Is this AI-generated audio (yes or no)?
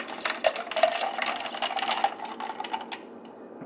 no